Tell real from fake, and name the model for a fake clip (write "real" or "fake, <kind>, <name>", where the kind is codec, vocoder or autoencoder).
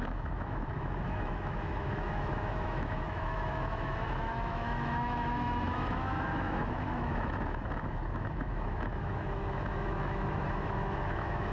fake, autoencoder, DAC-VAE